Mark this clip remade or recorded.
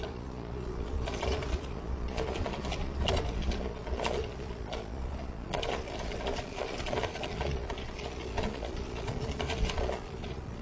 remade